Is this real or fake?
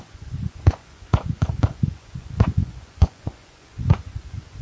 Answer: fake